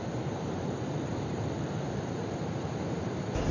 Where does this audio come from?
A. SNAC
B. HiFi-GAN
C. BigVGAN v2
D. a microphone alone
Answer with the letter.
C